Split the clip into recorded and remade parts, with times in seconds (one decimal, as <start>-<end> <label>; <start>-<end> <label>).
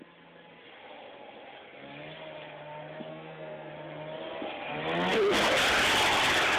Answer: 0.0-3.1 recorded; 3.1-3.7 remade; 3.7-6.6 recorded